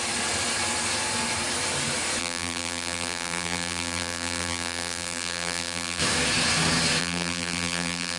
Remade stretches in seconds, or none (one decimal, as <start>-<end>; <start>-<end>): 2.2-6.0; 7.0-8.2